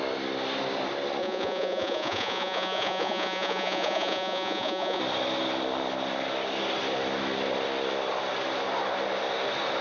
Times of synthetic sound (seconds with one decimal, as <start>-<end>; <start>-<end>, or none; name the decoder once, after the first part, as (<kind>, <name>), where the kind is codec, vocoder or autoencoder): 1.2-5.0 (vocoder, Vocos)